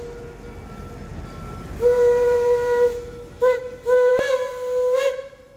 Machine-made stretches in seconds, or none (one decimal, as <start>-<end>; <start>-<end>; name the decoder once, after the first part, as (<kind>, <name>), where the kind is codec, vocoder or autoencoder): none